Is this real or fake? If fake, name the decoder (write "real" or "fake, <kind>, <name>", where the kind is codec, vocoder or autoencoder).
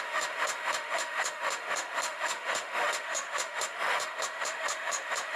fake, autoencoder, DAC-VAE